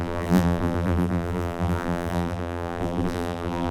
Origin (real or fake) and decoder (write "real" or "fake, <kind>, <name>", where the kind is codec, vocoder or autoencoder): fake, vocoder, BigVGAN v2